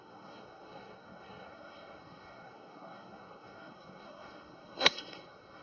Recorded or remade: remade